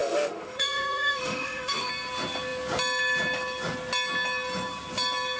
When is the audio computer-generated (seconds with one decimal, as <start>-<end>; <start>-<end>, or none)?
0.0-1.9